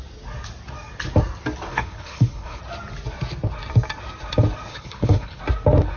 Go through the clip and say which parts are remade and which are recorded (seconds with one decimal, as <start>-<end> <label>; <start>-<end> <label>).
0.0-1.7 recorded; 1.7-2.6 remade; 2.6-4.7 recorded; 4.7-5.4 remade; 5.4-6.0 recorded